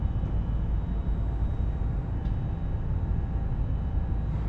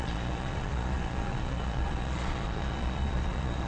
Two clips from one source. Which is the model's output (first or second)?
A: second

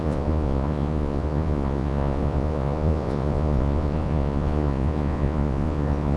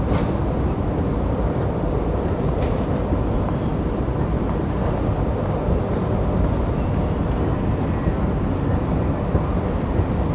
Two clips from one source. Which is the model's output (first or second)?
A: first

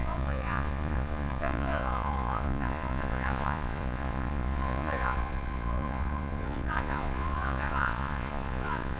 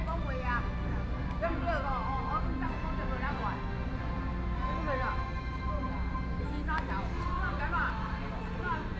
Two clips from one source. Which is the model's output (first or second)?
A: first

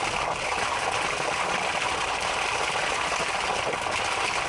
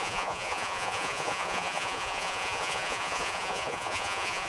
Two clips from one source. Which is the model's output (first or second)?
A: second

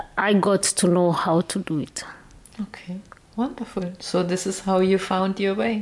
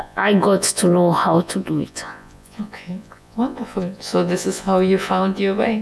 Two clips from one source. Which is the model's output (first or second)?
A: second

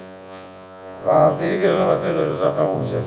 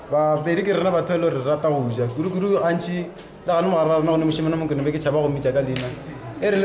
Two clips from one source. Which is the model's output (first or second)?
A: first